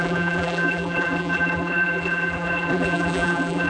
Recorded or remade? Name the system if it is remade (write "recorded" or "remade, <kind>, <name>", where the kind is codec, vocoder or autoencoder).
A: remade, vocoder, BigVGAN v2